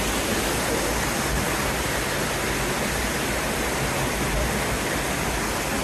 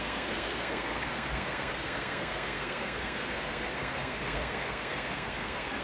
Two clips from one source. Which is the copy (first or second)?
second